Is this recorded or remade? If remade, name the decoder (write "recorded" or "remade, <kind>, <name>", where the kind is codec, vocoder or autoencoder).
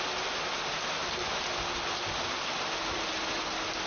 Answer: recorded